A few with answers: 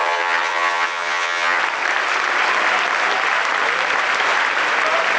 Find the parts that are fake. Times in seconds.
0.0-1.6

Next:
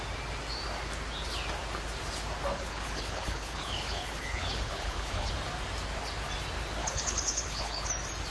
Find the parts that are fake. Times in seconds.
2.5-5.3; 6.8-7.9

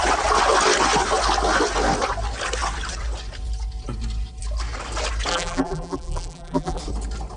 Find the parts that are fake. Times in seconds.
5.3-6.8

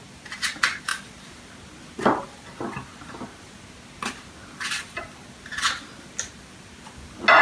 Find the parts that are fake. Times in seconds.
none

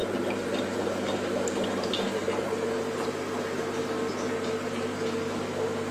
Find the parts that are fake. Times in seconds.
0.0-2.3

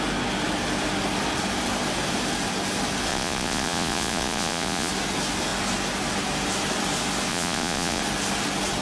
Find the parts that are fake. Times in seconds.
3.1-4.9; 7.3-8.0